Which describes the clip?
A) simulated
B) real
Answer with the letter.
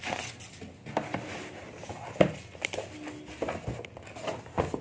B